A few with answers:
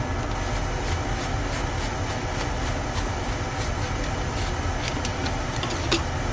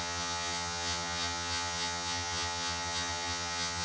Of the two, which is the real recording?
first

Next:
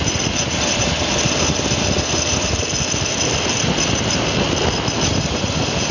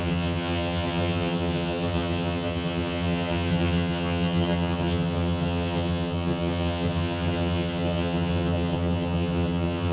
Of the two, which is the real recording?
first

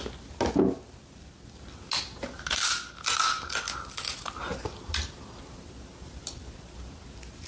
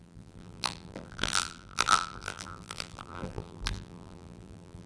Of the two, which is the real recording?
first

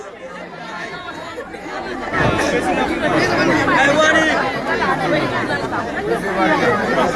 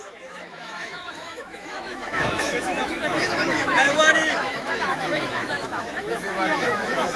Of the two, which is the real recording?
first